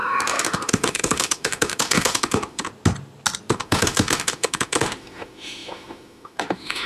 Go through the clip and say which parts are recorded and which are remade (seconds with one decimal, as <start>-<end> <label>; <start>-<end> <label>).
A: 0.0-2.7 remade; 2.7-3.5 recorded; 3.5-6.9 remade